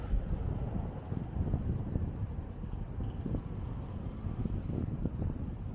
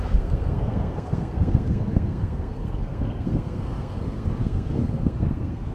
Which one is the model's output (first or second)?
second